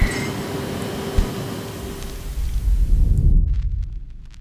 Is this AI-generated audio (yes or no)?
no